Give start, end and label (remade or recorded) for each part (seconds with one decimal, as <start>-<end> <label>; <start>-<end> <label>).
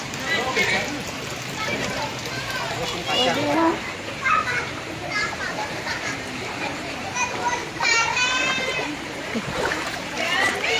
0.0-2.1 remade; 2.1-4.3 recorded; 4.3-8.0 remade; 8.0-8.9 recorded; 8.9-10.8 remade